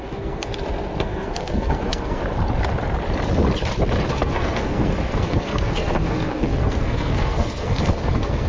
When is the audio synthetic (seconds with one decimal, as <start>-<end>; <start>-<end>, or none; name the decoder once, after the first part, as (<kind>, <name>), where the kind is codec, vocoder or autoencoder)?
0.0-0.5 (codec, SNAC); 1.0-2.2; 4.1-8.5